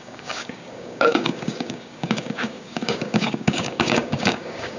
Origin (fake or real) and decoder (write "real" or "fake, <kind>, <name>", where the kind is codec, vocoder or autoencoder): fake, codec, DAC